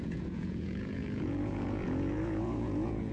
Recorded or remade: remade